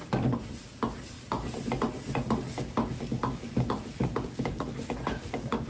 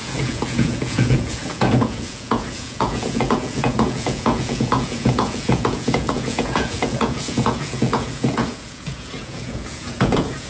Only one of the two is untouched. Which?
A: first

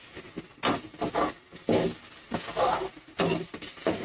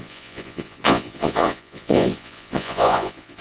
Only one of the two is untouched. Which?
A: first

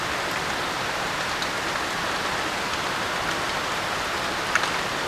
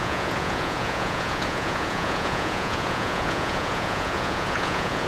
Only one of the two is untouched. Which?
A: first